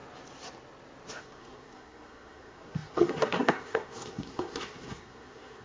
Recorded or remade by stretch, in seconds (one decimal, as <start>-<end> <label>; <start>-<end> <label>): 0.0-1.2 recorded; 1.2-5.6 remade